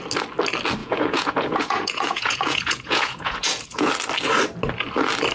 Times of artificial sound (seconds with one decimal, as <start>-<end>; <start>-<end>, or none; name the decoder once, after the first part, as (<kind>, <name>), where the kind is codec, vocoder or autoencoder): 0.8-3.9 (vocoder, Vocos)